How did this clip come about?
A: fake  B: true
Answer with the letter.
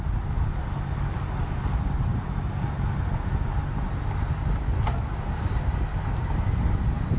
B